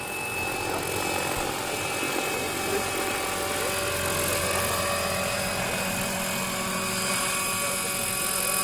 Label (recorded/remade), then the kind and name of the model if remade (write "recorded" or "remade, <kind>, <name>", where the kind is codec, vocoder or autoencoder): recorded